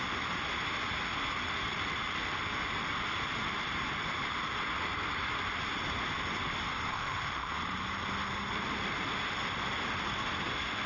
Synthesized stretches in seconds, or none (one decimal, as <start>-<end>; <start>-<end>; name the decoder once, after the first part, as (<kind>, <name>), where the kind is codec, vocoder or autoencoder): 6.9-7.5 (autoencoder, DAC-VAE)